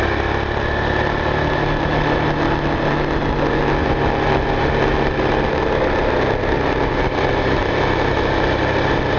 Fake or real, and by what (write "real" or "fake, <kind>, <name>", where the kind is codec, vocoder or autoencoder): real